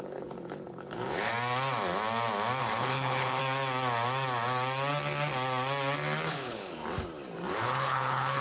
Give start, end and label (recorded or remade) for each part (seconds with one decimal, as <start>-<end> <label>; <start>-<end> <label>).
0.0-1.3 remade; 1.3-2.6 recorded; 2.6-3.4 remade; 3.4-6.3 recorded; 6.3-6.8 remade; 6.8-7.5 recorded; 7.5-8.4 remade

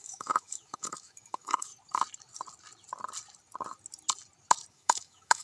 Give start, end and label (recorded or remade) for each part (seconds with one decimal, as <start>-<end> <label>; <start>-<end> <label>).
0.0-1.7 remade; 1.7-4.7 recorded; 4.7-5.4 remade

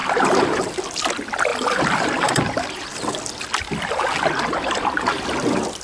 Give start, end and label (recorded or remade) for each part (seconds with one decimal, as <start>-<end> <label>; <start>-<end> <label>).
0.0-0.8 remade; 0.8-1.5 recorded; 1.5-4.8 remade; 4.8-5.8 recorded

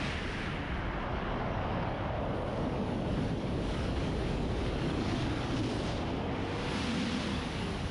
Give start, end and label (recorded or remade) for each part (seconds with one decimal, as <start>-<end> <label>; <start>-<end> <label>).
0.0-1.1 recorded; 1.1-2.0 remade; 2.0-2.5 recorded; 2.5-5.5 remade; 5.5-7.3 recorded; 7.3-7.9 remade

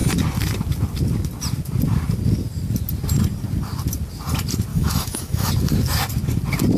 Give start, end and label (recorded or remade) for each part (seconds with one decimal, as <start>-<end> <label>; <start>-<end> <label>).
0.0-4.7 recorded; 4.7-5.5 remade; 5.5-6.8 recorded

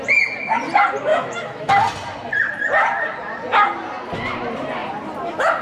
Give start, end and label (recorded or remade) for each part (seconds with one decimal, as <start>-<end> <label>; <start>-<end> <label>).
0.0-1.1 recorded; 1.1-1.7 remade; 1.7-5.6 recorded

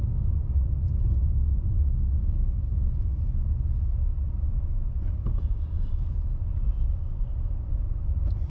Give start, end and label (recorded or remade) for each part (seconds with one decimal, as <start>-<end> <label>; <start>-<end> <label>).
0.0-4.1 recorded; 4.1-8.5 remade

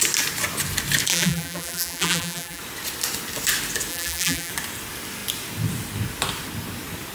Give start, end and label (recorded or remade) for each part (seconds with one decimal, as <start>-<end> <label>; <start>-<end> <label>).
0.0-1.1 recorded; 1.1-2.6 remade; 2.6-3.9 recorded; 3.9-4.5 remade; 4.5-7.1 recorded